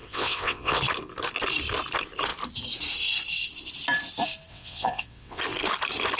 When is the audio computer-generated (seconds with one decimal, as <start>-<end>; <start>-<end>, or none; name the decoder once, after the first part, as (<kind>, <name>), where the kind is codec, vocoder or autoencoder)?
0.0-0.8 (vocoder, WaveNeXt); 4.5-5.4